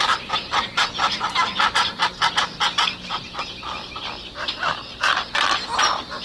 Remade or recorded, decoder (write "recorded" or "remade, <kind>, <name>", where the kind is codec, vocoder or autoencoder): remade, vocoder, BigVGAN v2